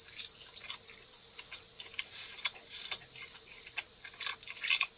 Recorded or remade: recorded